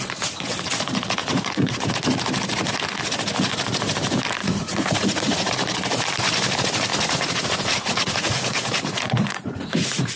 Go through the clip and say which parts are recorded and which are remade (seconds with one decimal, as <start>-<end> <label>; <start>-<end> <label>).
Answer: 0.0-1.2 recorded; 1.2-1.9 remade; 1.9-4.4 recorded; 4.4-5.5 remade; 5.5-6.9 recorded; 6.9-10.2 remade